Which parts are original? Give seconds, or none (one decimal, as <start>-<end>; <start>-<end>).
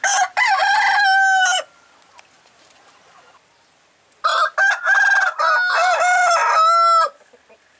0.0-4.3; 4.8-7.8